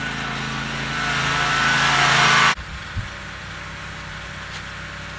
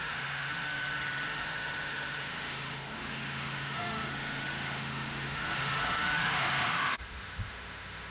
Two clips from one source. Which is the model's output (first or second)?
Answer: second